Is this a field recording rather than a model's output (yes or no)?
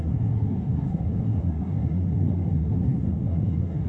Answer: no